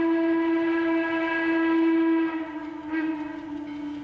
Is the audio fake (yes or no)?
no